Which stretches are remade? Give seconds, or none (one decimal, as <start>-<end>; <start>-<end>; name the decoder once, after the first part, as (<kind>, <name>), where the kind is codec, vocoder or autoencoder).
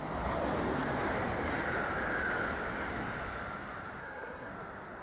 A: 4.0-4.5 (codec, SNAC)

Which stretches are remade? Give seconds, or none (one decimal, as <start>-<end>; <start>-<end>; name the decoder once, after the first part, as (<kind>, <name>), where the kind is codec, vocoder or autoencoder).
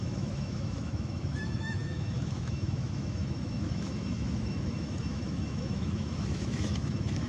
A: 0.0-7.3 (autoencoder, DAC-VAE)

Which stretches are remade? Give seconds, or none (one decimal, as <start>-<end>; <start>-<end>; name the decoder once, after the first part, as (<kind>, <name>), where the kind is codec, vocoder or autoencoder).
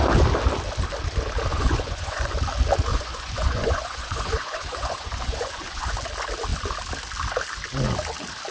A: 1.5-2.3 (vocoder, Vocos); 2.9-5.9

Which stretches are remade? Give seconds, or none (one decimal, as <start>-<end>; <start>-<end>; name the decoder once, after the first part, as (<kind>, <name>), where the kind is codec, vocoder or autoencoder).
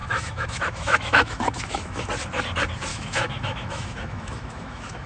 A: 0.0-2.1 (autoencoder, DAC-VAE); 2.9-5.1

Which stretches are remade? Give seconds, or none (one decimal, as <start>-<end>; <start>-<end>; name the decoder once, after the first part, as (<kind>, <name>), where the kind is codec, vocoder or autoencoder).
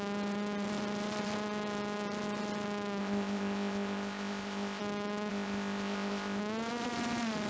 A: 3.0-4.8 (codec, ZipCodec); 5.3-6.4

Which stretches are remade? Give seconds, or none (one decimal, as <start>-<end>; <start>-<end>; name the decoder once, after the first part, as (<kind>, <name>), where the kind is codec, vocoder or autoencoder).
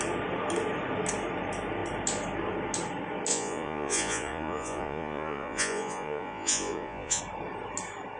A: 3.3-7.2 (vocoder, Vocos)